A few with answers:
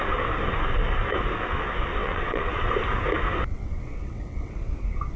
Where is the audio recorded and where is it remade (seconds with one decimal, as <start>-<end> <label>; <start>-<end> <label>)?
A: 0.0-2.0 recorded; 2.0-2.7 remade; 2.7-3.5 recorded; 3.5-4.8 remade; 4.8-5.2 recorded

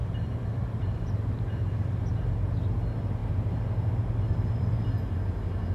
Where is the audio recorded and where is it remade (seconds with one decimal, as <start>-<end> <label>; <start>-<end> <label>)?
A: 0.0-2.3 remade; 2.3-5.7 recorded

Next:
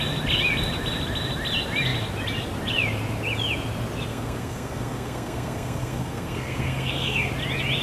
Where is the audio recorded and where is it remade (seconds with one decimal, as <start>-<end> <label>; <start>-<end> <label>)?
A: 0.0-4.1 recorded; 4.1-7.3 remade; 7.3-7.8 recorded

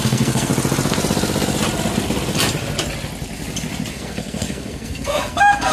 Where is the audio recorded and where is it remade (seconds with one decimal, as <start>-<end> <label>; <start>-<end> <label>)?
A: 0.0-0.5 remade; 0.5-3.9 recorded; 3.9-5.7 remade